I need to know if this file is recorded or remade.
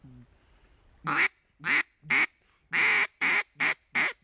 recorded